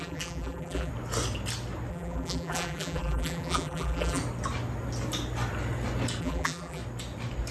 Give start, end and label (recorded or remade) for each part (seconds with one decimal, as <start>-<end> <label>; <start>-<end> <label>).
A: 0.0-0.9 remade; 0.9-1.9 recorded; 1.9-4.2 remade; 4.2-6.2 recorded; 6.2-6.8 remade; 6.8-7.5 recorded